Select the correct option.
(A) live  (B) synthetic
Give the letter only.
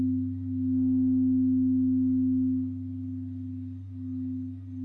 A